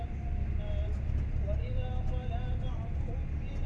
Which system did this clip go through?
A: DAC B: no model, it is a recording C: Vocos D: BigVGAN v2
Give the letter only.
B